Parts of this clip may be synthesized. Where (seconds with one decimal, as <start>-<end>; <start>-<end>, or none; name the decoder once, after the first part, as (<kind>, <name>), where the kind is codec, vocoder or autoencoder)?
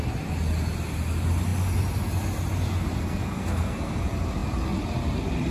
3.0-4.0 (codec, SNAC)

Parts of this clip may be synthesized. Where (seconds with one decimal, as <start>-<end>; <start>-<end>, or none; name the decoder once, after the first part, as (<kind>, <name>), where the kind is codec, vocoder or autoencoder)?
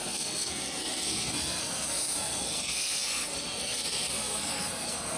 0.0-5.2 (codec, SNAC)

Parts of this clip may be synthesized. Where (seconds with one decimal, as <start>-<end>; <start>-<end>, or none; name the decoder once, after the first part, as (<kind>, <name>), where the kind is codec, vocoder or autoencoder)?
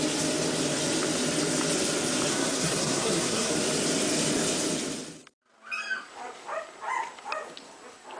2.3-3.5 (codec, SNAC)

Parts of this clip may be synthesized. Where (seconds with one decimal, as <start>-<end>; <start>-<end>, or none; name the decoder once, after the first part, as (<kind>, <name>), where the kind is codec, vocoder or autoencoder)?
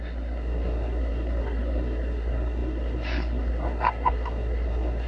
0.0-5.1 (codec, SNAC)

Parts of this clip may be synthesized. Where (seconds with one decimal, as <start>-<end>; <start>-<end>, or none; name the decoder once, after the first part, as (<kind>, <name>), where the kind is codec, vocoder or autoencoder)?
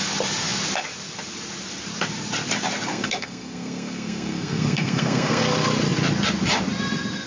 2.9-5.4 (codec, SNAC)